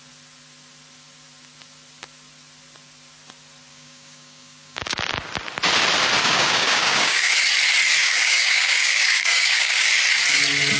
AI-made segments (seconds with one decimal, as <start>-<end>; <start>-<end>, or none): 3.7-5.0; 6.2-7.3; 8.0-9.9